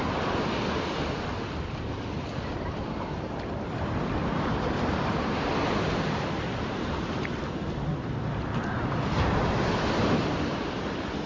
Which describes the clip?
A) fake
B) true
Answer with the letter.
A